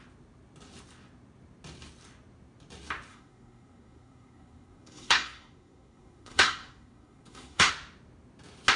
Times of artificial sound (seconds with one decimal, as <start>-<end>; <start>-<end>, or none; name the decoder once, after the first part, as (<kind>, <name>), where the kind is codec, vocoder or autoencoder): 3.1-7.7 (codec, SNAC)